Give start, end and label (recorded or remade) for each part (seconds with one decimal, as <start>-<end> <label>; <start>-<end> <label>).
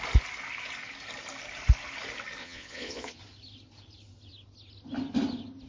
0.0-2.4 recorded; 2.4-3.2 remade; 3.2-5.7 recorded